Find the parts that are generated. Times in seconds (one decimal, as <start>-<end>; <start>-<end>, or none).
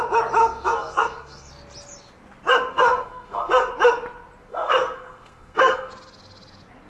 0.4-1.5; 2.7-3.7; 4.5-5.9